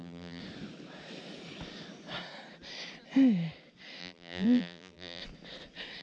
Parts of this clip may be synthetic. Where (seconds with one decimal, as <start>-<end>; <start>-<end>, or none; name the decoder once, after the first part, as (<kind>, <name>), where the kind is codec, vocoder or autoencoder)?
0.0-0.4 (vocoder, BigVGAN v2); 4.0-5.2